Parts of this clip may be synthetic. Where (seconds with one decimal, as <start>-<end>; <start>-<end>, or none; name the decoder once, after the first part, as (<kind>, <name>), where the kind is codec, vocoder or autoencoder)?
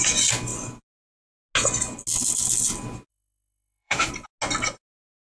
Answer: 3.1-4.1 (autoencoder, DAC-VAE)